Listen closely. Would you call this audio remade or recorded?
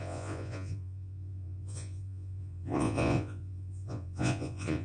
remade